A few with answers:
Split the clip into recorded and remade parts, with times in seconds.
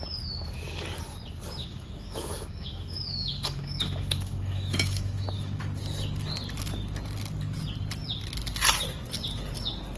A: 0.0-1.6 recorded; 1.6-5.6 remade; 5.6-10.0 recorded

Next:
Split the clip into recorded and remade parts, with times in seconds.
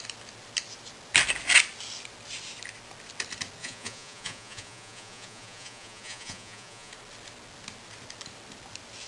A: 0.0-3.6 recorded; 3.6-6.9 remade; 6.9-9.1 recorded